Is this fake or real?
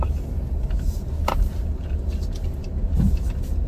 real